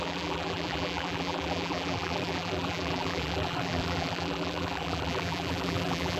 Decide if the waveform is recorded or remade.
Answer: remade